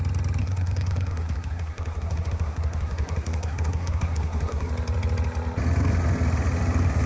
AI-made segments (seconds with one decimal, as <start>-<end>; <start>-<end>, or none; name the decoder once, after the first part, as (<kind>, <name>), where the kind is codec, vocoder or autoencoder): 0.4-4.7 (codec, SNAC)